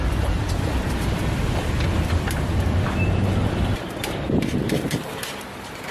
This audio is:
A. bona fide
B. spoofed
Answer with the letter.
B